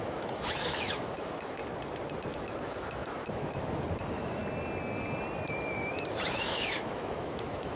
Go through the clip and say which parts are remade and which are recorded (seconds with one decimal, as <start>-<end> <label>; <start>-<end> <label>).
0.0-1.6 remade; 1.6-2.3 recorded; 2.3-4.4 remade; 4.4-5.7 recorded; 5.7-7.8 remade